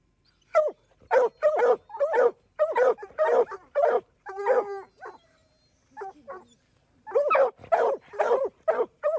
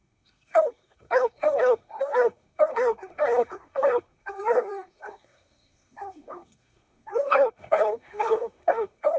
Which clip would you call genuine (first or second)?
first